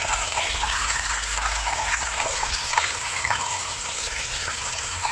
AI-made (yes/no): yes